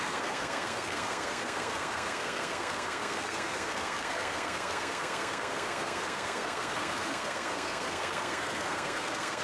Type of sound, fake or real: fake